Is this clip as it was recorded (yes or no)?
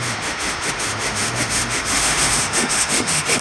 no